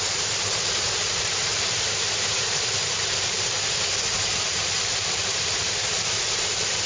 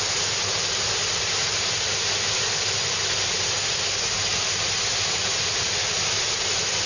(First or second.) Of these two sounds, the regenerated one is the first